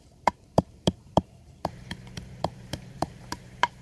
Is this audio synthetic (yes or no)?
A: yes